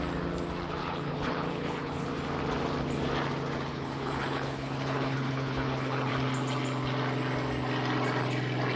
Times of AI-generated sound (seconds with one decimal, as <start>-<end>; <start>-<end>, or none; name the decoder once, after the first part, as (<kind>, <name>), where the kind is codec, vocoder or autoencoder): 0.8-2.1 (codec, HILCodec); 3.7-6.1